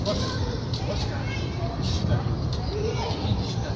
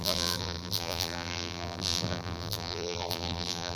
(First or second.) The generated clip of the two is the second